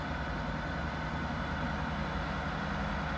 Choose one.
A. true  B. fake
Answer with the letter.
A